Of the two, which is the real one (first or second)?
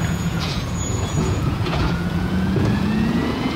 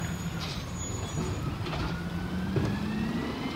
second